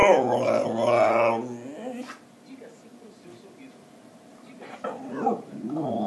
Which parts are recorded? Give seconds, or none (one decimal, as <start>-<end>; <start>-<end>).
0.0-3.7